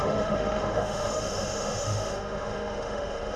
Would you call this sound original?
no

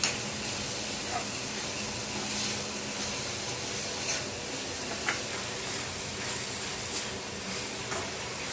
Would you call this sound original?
yes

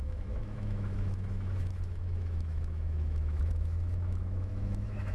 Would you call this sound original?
no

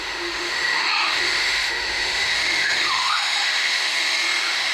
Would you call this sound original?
no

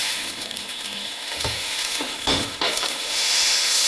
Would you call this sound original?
no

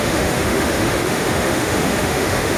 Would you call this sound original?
no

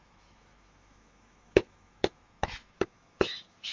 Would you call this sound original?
no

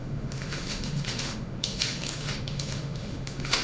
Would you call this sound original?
no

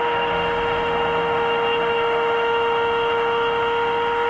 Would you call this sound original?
no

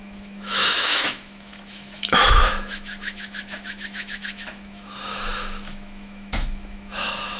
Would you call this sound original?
no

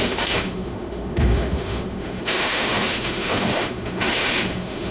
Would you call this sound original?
no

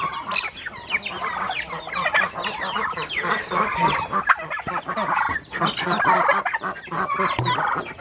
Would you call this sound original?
yes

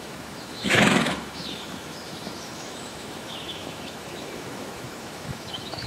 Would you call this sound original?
no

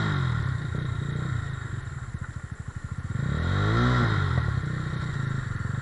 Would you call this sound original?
yes